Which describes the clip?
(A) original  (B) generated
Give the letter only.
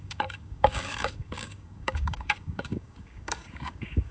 B